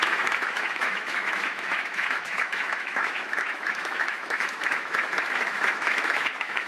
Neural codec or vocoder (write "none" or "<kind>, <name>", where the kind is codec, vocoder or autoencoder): autoencoder, DAC-VAE